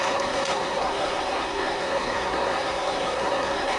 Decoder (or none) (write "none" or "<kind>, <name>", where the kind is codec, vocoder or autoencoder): codec, SNAC